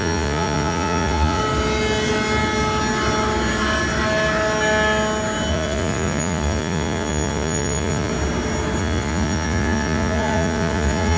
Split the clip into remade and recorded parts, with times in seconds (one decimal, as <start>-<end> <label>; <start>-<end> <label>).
0.0-1.4 remade; 1.4-5.5 recorded; 5.5-8.1 remade; 8.1-8.8 recorded; 8.8-11.2 remade